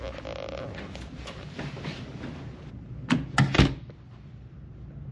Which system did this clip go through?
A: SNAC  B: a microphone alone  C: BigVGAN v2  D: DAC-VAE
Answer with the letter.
B